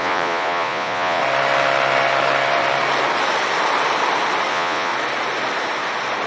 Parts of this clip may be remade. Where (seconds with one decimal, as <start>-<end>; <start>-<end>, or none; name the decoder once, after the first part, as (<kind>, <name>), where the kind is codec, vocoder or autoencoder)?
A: 0.0-1.2 (vocoder, Vocos); 4.5-4.9